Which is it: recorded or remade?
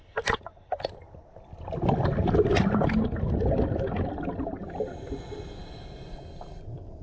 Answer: recorded